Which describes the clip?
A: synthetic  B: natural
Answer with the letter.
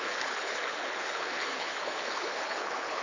A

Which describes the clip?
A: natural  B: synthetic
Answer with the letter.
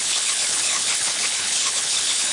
B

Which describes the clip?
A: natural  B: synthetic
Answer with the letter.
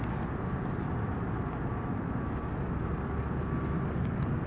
A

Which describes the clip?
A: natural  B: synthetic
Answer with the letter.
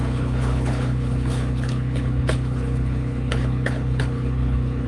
B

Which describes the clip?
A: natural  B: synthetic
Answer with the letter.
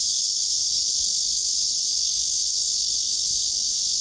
B